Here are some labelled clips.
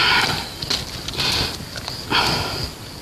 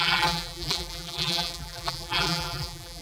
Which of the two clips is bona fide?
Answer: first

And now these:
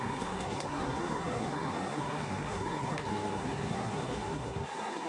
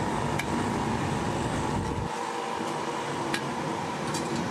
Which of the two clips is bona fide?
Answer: second